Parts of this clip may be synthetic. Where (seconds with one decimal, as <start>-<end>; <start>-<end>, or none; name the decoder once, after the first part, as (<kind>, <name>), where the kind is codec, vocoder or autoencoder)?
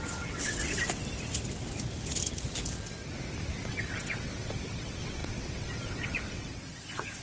0.0-0.6 (vocoder, WaveNeXt); 3.5-7.2